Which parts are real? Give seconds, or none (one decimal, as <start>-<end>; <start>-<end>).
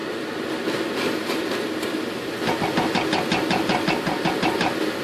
0.0-5.0